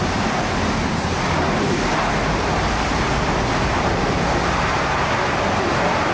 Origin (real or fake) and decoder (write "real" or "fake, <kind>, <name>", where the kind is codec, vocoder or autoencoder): real